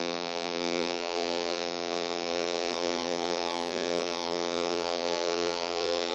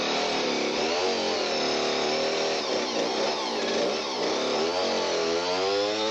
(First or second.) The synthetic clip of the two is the first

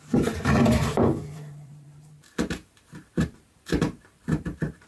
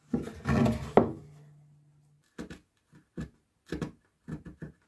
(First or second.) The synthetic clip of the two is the first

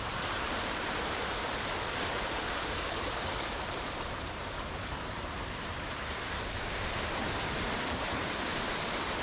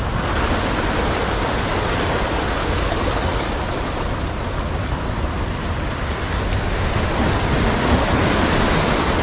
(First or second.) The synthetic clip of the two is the first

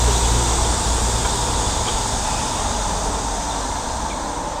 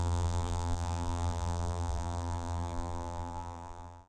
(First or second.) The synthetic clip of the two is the second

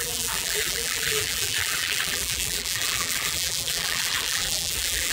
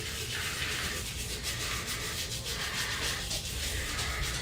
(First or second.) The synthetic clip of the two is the first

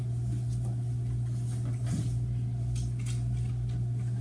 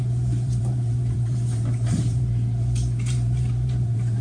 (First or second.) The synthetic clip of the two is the second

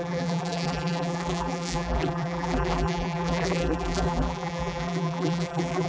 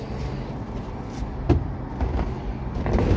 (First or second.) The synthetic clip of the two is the first